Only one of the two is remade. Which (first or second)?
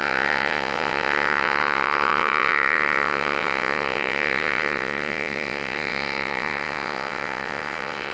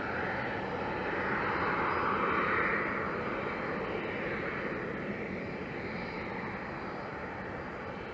first